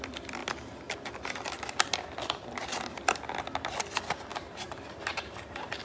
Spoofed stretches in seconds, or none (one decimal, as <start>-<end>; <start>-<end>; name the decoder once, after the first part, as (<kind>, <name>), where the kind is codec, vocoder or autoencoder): 4.3-5.8 (vocoder, BigVGAN v2)